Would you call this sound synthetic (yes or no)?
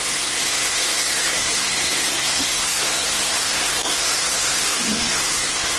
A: yes